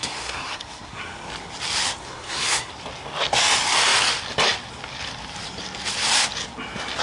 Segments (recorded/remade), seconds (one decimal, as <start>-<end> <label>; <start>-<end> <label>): 0.0-1.0 remade; 1.0-2.0 recorded; 2.0-2.7 remade; 2.7-7.0 recorded

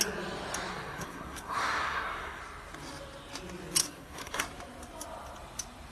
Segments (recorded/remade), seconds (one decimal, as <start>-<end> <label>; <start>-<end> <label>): 0.0-0.7 recorded; 0.7-2.4 remade; 2.4-3.8 recorded; 3.8-4.4 remade; 4.4-5.9 recorded